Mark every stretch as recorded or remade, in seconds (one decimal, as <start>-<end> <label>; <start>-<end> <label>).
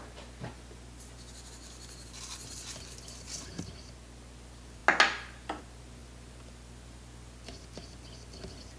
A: 0.0-8.8 recorded